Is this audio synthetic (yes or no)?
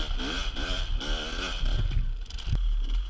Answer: no